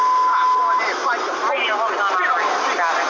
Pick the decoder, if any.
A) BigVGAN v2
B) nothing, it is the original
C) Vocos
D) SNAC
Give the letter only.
B